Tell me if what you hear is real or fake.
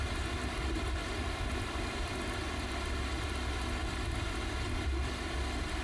fake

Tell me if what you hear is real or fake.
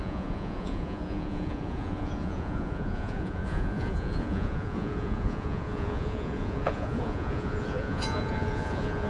fake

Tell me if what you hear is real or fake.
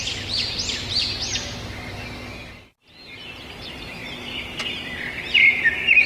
real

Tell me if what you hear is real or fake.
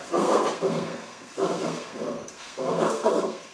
fake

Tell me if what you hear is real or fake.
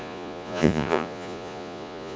fake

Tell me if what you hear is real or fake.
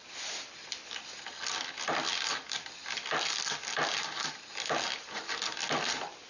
real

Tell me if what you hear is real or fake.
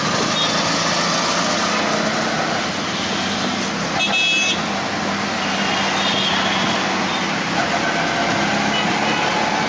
real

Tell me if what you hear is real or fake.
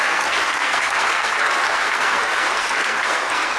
fake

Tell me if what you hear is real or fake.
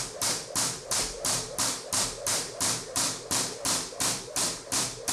fake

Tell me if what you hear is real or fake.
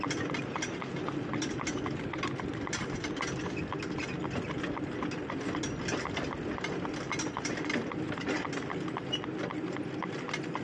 real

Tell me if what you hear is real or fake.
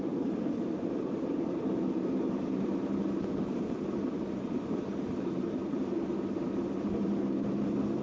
fake